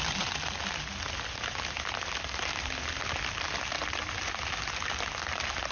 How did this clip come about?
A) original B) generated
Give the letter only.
A